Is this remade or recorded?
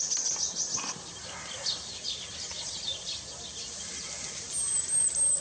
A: recorded